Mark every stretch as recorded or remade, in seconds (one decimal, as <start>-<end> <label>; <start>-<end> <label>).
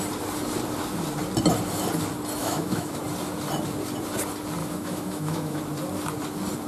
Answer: 0.0-2.4 recorded; 2.4-3.0 remade; 3.0-4.6 recorded; 4.6-5.6 remade; 5.6-6.7 recorded